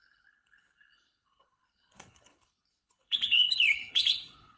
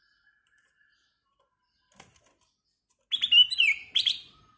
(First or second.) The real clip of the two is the second